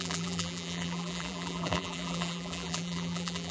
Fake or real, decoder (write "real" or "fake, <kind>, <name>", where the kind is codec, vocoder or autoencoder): fake, vocoder, BigVGAN v2